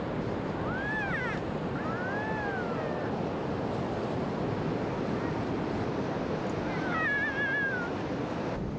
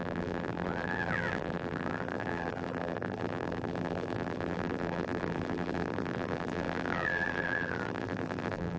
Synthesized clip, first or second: second